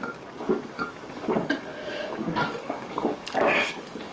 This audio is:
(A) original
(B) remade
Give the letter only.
B